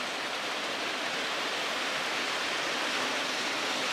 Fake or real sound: real